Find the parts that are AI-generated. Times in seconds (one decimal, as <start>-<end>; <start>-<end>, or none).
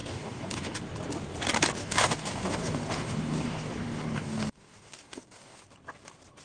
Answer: 0.0-0.8; 1.8-5.6